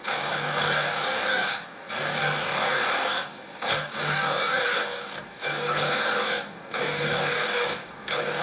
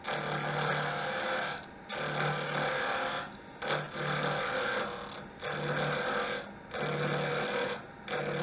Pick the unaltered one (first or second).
second